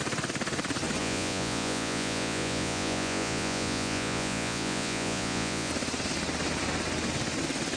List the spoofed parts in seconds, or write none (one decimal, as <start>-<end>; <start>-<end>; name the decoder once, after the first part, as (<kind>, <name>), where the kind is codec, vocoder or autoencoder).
1.0-5.7 (vocoder, Vocos)